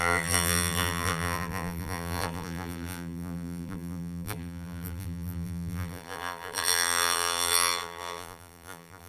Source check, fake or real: fake